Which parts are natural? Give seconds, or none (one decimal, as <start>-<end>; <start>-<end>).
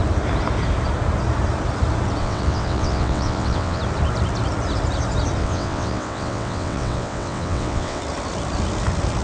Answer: 0.0-2.2; 3.8-5.4; 8.0-9.2